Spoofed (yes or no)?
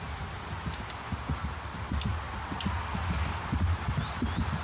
no